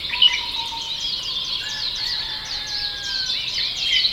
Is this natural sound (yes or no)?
yes